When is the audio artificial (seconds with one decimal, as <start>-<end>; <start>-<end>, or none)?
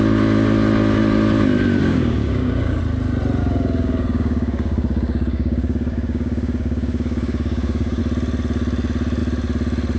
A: 1.8-2.8; 3.4-8.0